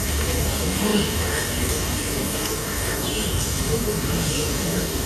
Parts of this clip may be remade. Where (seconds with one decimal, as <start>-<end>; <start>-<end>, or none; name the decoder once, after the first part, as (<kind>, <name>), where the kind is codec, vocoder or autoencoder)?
0.0-5.1 (codec, DAC)